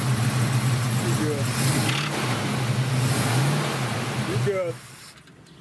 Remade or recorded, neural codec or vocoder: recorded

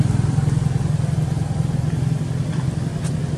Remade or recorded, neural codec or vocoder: recorded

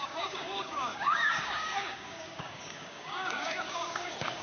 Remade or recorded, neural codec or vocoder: remade, codec, DAC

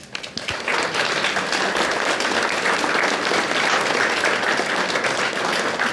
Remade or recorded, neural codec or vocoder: recorded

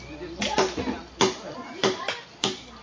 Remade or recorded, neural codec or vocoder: recorded